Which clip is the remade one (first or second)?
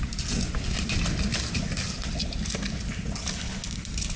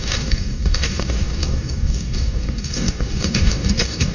second